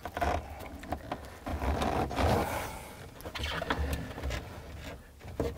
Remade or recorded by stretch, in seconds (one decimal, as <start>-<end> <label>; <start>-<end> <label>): 0.0-5.6 recorded